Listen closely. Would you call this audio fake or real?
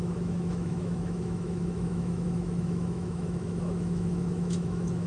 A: fake